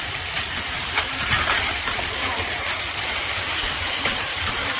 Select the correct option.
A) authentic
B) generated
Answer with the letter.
B